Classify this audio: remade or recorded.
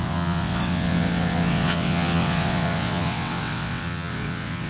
remade